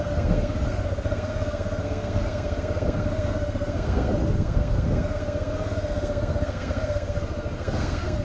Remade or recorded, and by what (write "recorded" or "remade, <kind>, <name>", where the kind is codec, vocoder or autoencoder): remade, codec, SNAC